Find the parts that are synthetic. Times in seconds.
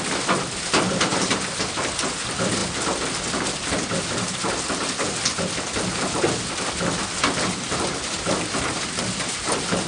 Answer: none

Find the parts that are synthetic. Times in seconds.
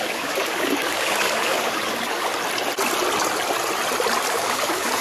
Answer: 0.0-2.3 (codec, DAC); 4.3-5.0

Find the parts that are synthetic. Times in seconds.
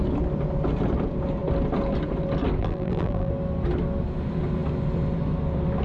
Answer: 2.6-3.3 (vocoder, BigVGAN v2)